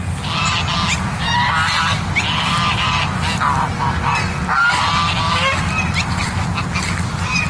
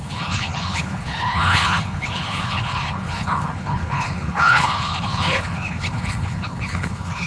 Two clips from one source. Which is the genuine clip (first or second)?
first